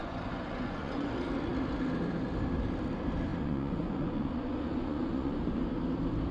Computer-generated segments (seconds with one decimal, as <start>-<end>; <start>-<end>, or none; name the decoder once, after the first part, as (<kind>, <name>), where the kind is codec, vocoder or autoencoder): 0.0-1.1 (vocoder, Vocos); 3.3-5.6